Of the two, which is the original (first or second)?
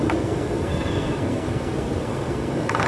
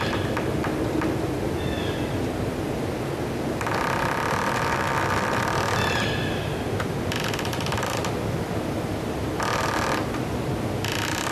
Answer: second